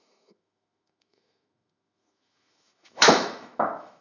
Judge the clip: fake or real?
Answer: fake